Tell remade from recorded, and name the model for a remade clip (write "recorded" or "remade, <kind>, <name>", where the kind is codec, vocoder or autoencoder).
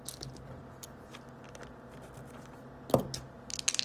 recorded